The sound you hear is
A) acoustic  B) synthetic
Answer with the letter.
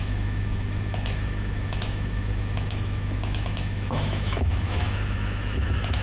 B